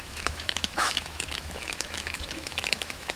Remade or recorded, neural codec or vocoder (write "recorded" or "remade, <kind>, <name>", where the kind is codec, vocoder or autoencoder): remade, autoencoder, DAC-VAE